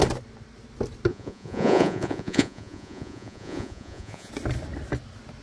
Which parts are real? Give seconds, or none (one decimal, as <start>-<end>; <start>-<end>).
0.0-1.1; 4.3-5.4